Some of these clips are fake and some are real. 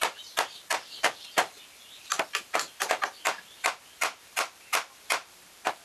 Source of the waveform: fake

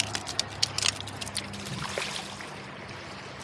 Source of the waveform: real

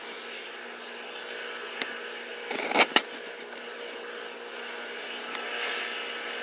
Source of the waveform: real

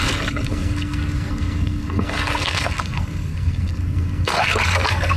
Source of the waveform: fake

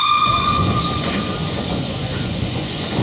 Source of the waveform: fake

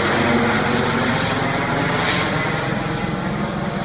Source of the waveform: real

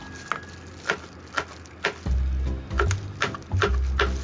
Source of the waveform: real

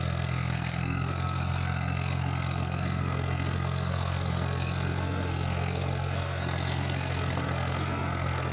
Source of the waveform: fake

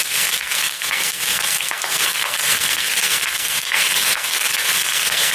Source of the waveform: fake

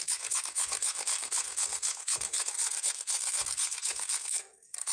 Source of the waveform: fake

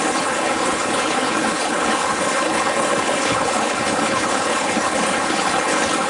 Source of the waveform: fake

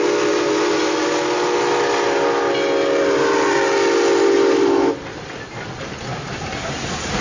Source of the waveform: real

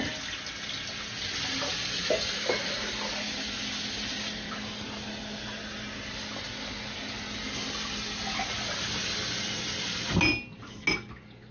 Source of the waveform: real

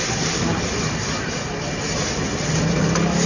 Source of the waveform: real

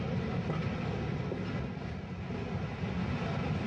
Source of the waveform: real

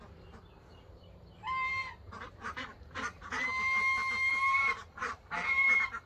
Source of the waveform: fake